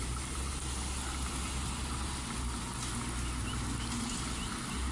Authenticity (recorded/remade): recorded